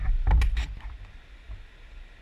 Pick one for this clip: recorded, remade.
recorded